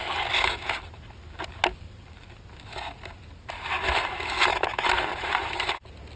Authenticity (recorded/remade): recorded